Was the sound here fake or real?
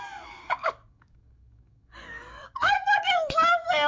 fake